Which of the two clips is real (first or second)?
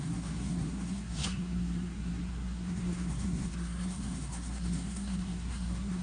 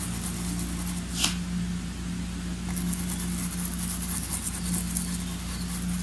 second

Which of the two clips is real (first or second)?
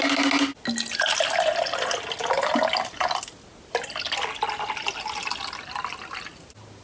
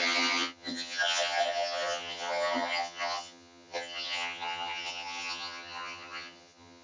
first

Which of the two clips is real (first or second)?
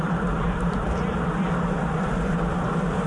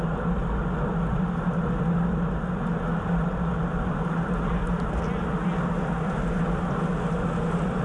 second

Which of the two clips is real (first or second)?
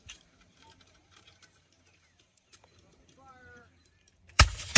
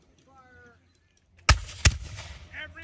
second